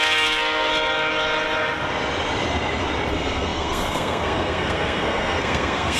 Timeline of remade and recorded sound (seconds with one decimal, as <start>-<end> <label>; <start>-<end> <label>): 0.0-0.7 remade; 0.7-3.1 recorded; 3.1-6.0 remade